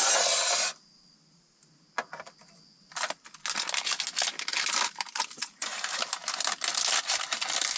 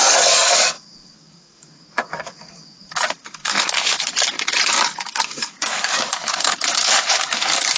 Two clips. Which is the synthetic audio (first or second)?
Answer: second